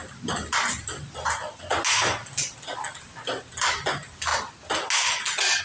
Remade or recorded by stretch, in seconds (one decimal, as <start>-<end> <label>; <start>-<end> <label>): 0.0-5.6 recorded

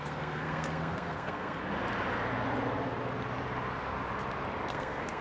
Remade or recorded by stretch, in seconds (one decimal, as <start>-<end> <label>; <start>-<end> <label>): 0.0-1.6 remade; 1.6-4.7 recorded; 4.7-5.2 remade

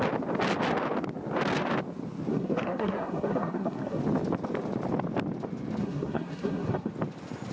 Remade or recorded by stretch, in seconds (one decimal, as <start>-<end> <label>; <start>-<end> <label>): 0.0-2.3 recorded; 2.3-4.0 remade; 4.0-5.8 recorded; 5.8-6.9 remade; 6.9-7.5 recorded

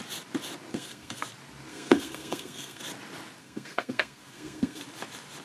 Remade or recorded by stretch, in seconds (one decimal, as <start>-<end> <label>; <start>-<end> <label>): 0.0-0.7 recorded; 0.7-1.2 remade; 1.2-1.7 recorded; 1.7-2.8 remade; 2.8-3.4 recorded; 3.4-4.8 remade; 4.8-5.4 recorded